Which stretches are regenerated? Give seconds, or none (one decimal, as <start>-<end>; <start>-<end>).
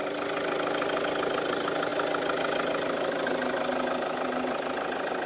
none